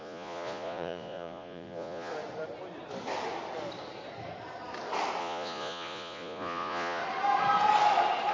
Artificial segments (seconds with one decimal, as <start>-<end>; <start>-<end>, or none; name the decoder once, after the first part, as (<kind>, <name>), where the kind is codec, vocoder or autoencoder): 0.0-2.1 (vocoder, Vocos); 5.2-7.0